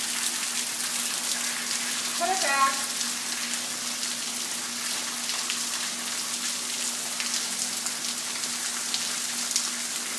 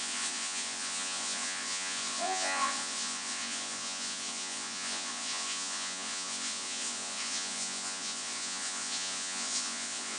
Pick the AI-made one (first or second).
second